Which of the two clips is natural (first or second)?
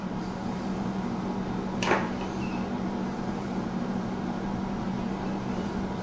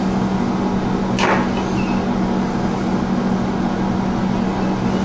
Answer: second